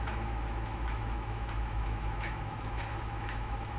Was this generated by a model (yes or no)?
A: yes